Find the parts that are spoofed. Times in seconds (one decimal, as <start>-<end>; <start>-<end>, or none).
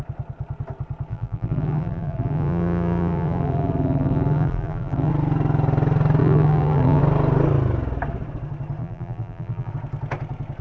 1.1-5.1; 6.2-7.0; 8.8-9.7